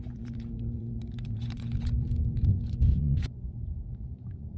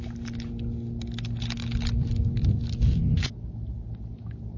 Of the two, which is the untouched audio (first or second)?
second